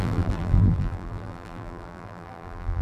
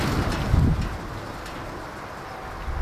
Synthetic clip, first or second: first